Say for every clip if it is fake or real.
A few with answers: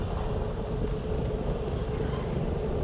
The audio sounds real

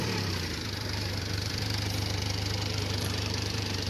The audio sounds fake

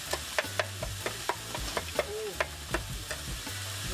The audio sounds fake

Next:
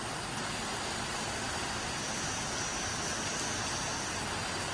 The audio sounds real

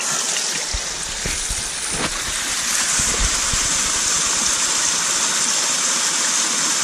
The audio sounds real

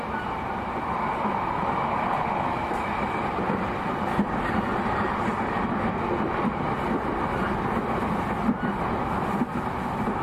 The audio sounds real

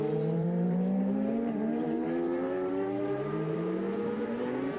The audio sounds fake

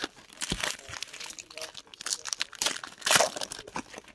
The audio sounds fake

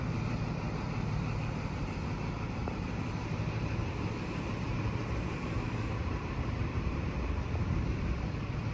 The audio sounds fake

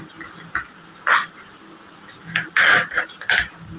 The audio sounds real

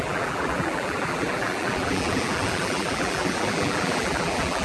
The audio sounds fake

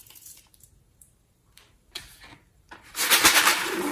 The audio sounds fake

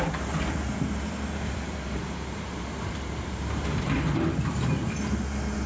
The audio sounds fake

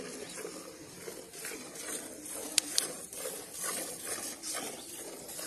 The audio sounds fake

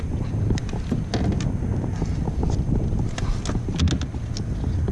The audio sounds real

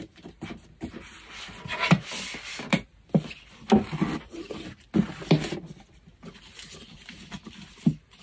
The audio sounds real